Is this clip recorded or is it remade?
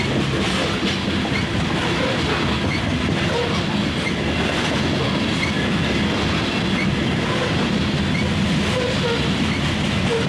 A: recorded